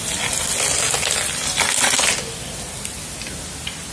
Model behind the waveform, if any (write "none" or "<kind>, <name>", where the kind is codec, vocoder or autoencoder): none